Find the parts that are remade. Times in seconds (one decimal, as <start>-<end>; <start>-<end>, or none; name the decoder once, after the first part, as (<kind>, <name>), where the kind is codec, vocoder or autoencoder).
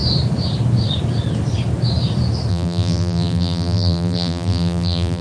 2.5-5.2 (vocoder, BigVGAN v2)